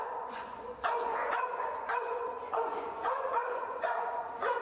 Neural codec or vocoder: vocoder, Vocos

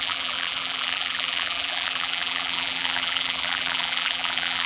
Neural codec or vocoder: vocoder, BigVGAN v2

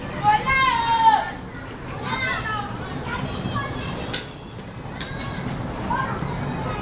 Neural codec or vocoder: none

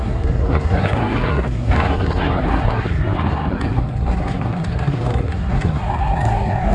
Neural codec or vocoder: codec, SNAC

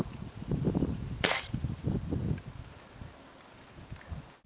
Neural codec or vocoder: none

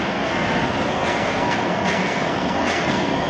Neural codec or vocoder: codec, SNAC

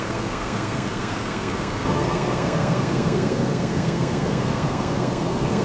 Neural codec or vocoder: codec, SNAC